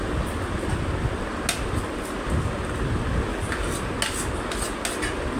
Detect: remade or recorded recorded